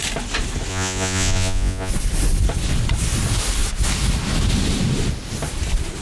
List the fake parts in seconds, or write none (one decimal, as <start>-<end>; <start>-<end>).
0.7-1.9